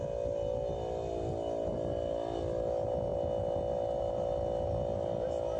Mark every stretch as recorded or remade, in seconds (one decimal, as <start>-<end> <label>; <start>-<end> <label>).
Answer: 0.0-5.6 recorded